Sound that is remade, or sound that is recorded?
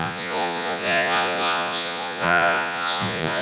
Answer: remade